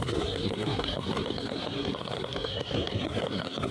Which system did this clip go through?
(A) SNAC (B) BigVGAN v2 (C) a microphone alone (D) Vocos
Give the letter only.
A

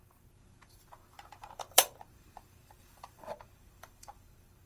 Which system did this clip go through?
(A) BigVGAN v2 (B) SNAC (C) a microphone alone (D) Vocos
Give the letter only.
A